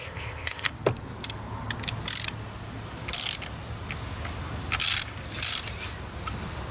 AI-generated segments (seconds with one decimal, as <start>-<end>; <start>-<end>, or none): 0.0-0.7